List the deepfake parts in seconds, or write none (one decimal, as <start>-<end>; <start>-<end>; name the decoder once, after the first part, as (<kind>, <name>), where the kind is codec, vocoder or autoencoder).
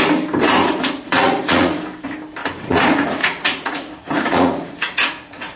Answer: 0.6-1.8 (vocoder, Vocos); 2.4-5.6